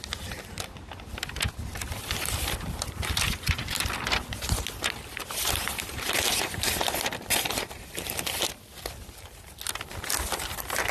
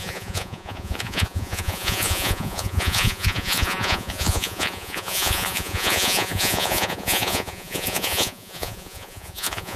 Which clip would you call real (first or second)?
first